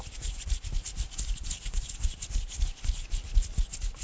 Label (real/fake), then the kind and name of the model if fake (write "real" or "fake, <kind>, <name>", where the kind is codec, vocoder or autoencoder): real